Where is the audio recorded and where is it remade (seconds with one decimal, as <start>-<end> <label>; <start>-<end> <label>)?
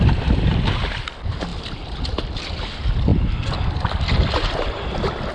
0.0-3.1 remade; 3.1-4.0 recorded; 4.0-5.3 remade